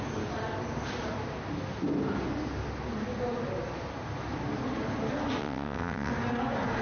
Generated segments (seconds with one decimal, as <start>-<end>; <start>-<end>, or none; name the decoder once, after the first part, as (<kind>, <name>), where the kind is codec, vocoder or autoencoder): 5.4-6.1 (vocoder, WaveNeXt)